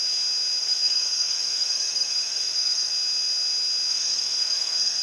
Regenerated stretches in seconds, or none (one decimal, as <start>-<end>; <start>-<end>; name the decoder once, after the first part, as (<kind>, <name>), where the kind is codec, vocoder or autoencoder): 0.6-2.9 (codec, SNAC); 3.9-5.0